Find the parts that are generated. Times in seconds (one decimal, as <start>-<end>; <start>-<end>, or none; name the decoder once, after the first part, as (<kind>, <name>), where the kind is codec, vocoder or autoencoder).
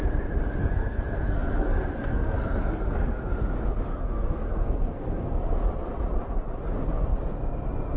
0.6-3.3 (codec, SNAC); 3.9-5.3